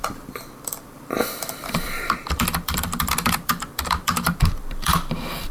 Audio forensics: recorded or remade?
remade